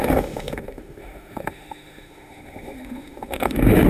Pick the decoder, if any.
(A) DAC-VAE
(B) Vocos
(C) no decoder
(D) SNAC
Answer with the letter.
A